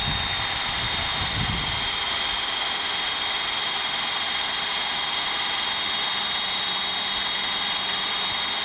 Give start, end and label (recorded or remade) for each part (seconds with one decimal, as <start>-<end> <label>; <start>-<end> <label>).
0.0-8.6 recorded